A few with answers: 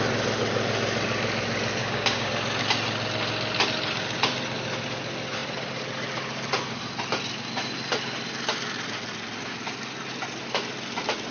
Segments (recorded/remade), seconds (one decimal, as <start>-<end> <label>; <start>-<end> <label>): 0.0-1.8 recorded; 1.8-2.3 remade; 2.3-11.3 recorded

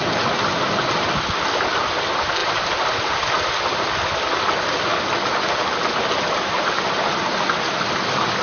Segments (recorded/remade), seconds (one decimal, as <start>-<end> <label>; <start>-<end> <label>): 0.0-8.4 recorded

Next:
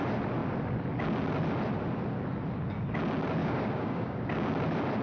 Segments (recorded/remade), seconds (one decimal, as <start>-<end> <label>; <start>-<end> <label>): 0.0-3.4 recorded; 3.4-4.5 remade; 4.5-5.0 recorded

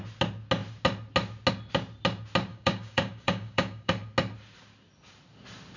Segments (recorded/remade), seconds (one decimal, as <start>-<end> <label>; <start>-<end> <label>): 0.0-2.5 recorded; 2.5-3.9 remade; 3.9-5.8 recorded

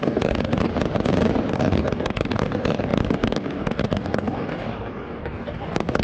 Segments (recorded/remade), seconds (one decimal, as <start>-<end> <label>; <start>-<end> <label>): 0.0-0.7 remade; 0.7-1.5 recorded; 1.5-6.0 remade